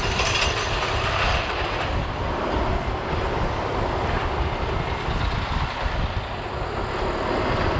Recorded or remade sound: recorded